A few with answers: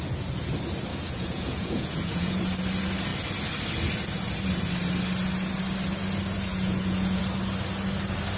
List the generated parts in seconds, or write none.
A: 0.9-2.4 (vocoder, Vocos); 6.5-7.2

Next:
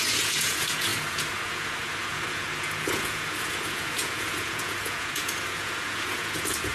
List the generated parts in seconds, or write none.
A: 0.0-6.7 (vocoder, Vocos)